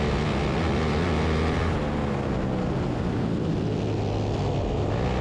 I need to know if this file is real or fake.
real